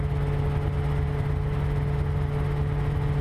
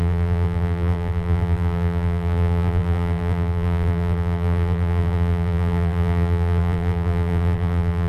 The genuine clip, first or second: first